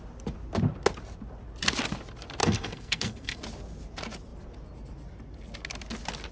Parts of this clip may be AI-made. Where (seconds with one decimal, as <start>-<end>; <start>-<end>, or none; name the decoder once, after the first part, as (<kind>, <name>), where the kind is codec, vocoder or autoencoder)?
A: 2.4-3.4 (codec, SNAC)